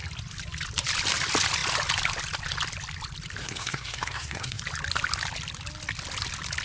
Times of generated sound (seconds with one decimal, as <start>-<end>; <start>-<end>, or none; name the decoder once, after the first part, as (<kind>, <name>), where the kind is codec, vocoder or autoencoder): 3.4-4.6 (codec, SNAC)